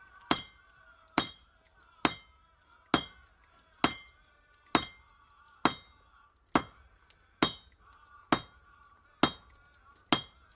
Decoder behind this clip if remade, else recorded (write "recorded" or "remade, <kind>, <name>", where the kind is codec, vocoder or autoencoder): recorded